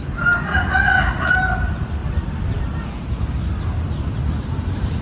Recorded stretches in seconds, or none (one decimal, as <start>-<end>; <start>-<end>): 0.0-0.5; 1.3-5.0